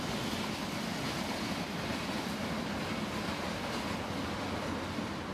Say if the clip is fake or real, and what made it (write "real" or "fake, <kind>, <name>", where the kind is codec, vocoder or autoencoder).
real